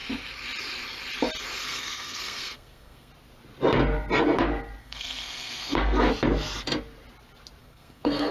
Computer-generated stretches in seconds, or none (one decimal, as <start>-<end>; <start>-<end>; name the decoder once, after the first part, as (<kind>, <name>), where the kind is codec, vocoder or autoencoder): 1.6-3.1 (codec, SNAC); 4.8-6.1; 7.6-8.3